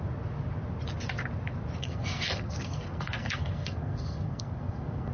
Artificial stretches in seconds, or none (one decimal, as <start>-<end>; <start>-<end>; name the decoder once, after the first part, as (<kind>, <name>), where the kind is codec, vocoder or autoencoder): 1.8-5.1 (codec, SNAC)